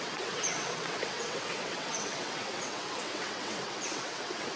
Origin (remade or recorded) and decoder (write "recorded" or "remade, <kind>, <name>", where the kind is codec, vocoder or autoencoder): remade, vocoder, WaveNeXt